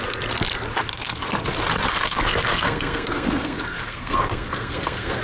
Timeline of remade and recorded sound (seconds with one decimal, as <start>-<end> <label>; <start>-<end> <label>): 0.0-0.9 recorded; 0.9-1.4 remade; 1.4-1.9 recorded; 1.9-5.2 remade